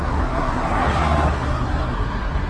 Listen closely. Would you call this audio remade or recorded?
remade